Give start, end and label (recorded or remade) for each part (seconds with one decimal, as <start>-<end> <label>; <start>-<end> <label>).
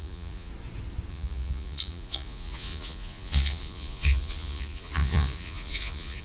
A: 0.0-0.5 remade; 0.5-1.1 recorded; 1.1-6.2 remade